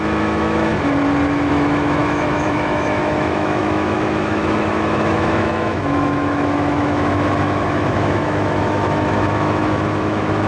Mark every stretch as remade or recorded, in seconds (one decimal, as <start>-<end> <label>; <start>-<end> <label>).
0.0-0.7 remade; 0.7-1.5 recorded; 1.5-10.5 remade